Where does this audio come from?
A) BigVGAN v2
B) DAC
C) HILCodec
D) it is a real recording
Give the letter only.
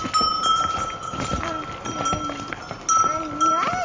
D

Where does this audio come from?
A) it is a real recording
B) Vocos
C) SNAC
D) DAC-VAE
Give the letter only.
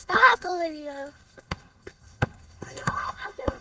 C